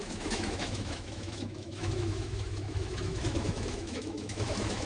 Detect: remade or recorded remade